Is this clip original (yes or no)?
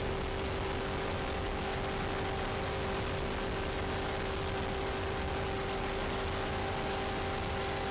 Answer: yes